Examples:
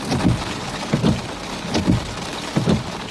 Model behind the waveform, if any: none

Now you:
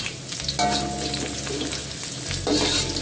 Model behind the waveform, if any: none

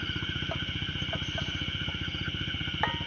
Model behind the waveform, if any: none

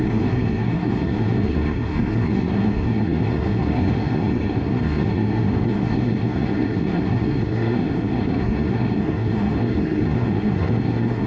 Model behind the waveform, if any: codec, SNAC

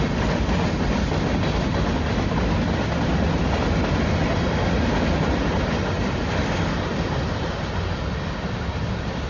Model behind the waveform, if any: none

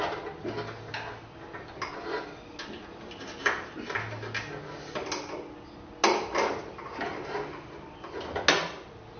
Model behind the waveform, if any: none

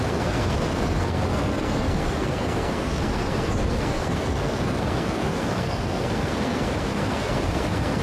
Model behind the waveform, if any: codec, SNAC